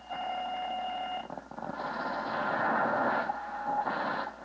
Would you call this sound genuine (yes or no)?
yes